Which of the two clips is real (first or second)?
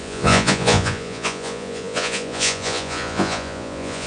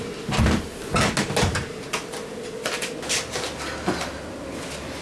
second